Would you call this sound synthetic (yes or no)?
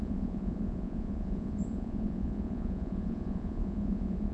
yes